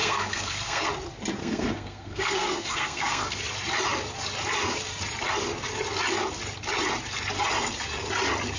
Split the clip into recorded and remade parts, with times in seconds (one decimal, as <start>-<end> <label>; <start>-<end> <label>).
0.0-0.9 remade; 0.9-1.4 recorded; 1.4-3.4 remade; 3.4-8.6 recorded